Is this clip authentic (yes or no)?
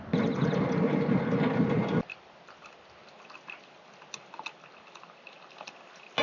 yes